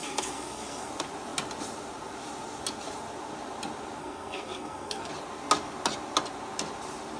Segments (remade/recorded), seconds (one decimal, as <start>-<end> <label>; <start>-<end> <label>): 0.0-0.9 remade; 0.9-4.0 recorded; 4.0-5.1 remade; 5.1-7.2 recorded